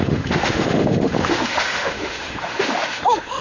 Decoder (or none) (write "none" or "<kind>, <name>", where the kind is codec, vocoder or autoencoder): autoencoder, DAC-VAE